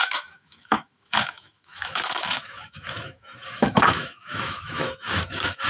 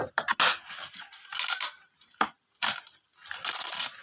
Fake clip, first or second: first